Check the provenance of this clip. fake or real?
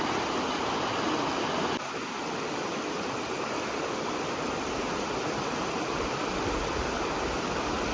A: real